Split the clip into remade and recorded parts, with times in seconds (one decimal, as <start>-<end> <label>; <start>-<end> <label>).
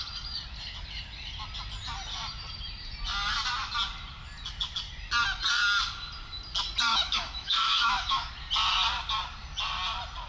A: 0.0-6.9 recorded; 6.9-8.3 remade; 8.3-10.3 recorded